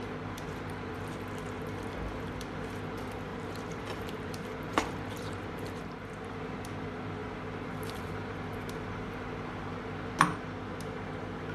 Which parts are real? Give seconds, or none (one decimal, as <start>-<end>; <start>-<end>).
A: 0.0-3.3; 6.1-11.5